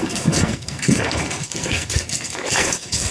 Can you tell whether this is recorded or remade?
remade